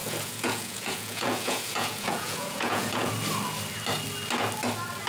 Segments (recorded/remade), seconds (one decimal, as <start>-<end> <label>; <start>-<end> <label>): 0.0-3.1 remade; 3.1-5.1 recorded